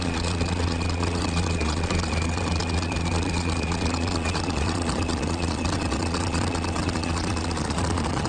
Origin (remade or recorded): remade